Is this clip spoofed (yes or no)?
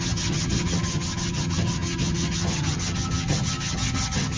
yes